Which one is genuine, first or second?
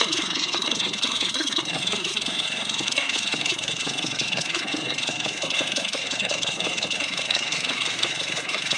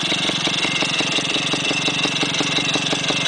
second